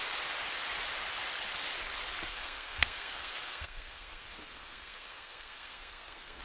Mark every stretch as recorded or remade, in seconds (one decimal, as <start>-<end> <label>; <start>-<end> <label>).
0.0-2.3 recorded; 2.3-6.4 remade